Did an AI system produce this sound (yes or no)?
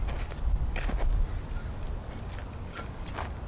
no